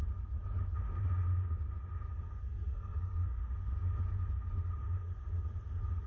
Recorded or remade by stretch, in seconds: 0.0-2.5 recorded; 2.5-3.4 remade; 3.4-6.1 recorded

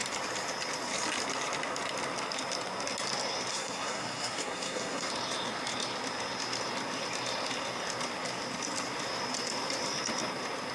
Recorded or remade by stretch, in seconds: 0.0-3.5 recorded; 3.5-5.1 remade; 5.1-10.7 recorded

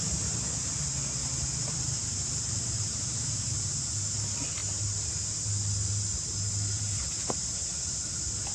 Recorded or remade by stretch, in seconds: 0.0-1.2 recorded; 1.2-3.3 remade; 3.3-8.5 recorded

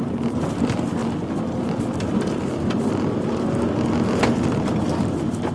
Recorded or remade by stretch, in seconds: 0.0-5.5 recorded

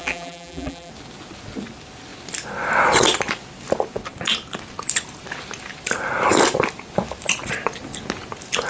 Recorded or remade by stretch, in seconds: 0.0-0.9 remade; 0.9-8.7 recorded

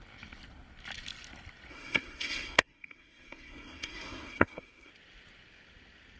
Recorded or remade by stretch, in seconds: 0.0-1.7 recorded; 1.7-4.9 remade; 4.9-6.2 recorded

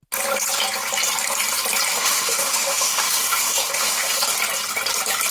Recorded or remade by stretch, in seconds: 0.0-1.9 recorded; 1.9-4.2 remade; 4.2-5.3 recorded

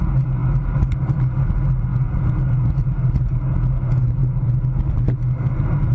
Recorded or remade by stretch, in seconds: 0.0-1.9 recorded; 1.9-3.1 remade; 3.1-5.9 recorded